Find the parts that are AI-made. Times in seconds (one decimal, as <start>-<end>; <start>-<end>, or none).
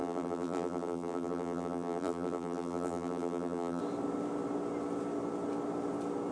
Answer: 0.0-3.8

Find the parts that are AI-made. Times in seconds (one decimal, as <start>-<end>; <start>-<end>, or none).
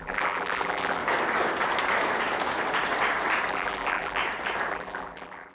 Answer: 0.0-1.0; 3.5-4.2; 4.7-5.5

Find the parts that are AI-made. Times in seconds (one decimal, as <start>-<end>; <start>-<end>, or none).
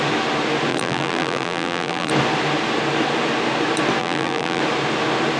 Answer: 0.7-2.1; 4.0-4.6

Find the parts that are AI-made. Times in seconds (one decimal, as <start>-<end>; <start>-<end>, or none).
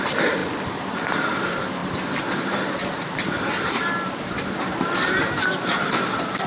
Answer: 0.4-1.4; 1.8-3.7